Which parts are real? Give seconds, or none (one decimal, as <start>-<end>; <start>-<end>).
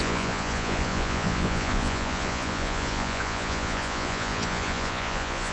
none